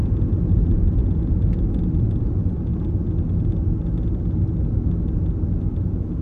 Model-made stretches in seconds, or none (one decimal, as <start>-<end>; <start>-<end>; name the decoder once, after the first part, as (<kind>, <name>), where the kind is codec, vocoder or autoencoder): 0.5-2.7 (vocoder, Vocos); 5.7-6.2